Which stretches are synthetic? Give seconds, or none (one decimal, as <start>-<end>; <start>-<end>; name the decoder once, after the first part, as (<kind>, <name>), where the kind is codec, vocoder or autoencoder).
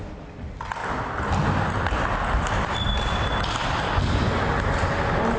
none